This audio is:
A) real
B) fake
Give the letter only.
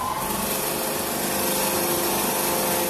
A